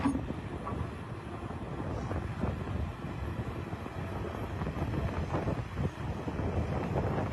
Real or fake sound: real